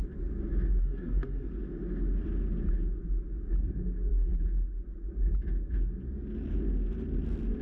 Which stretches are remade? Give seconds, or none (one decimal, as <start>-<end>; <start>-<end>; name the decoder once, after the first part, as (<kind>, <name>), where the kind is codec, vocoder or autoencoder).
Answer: 0.8-1.5 (codec, SNAC)